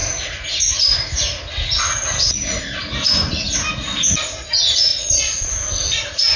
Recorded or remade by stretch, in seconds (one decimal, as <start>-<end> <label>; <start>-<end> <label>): 0.0-4.9 recorded; 4.9-5.5 remade; 5.5-6.4 recorded